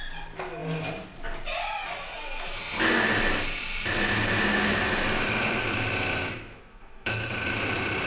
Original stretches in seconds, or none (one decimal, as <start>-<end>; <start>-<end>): 0.0-6.2; 7.3-8.1